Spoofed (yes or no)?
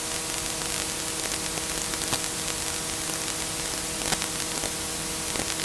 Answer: no